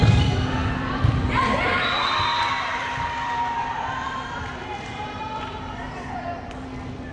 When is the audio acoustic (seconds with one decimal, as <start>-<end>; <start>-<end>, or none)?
none